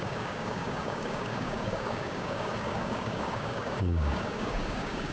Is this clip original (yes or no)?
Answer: no